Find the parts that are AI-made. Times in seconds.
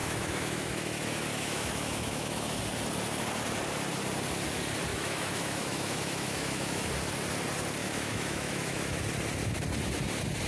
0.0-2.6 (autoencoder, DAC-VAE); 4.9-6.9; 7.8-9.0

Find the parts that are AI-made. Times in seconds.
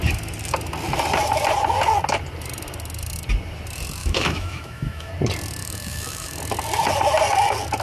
4.0-5.1 (autoencoder, DAC-VAE); 5.6-6.4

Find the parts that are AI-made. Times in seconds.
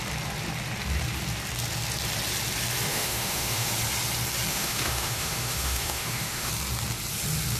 2.9-3.7 (autoencoder, DAC-VAE); 4.5-6.5